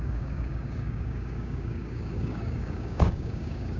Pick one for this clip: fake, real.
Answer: fake